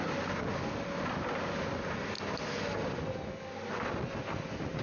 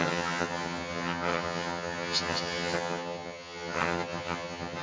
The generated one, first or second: second